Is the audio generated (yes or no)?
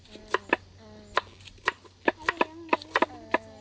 no